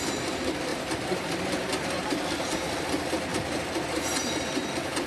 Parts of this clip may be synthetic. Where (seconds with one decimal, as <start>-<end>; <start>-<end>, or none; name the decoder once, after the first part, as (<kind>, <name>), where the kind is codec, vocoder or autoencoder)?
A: 0.7-2.1 (vocoder, BigVGAN v2); 3.3-4.3